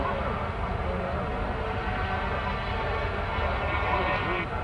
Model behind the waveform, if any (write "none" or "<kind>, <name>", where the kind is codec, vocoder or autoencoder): none